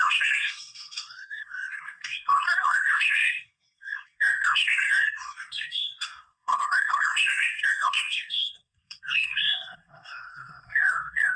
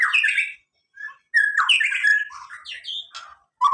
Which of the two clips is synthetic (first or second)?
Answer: first